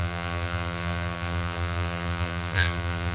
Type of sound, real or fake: fake